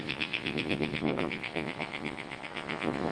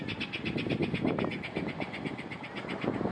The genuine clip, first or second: second